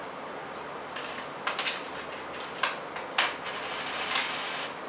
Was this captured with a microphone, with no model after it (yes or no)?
yes